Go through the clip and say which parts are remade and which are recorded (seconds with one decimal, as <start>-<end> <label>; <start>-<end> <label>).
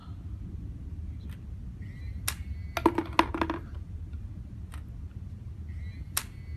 0.0-6.6 recorded